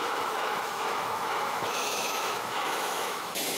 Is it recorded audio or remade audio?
remade